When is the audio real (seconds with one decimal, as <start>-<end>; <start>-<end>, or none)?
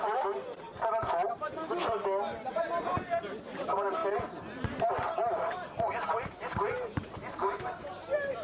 1.8-2.5; 4.0-4.9